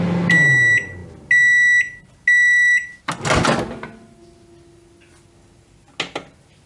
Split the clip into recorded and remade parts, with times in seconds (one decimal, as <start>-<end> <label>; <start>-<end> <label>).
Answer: 0.0-6.7 recorded